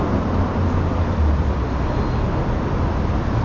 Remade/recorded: recorded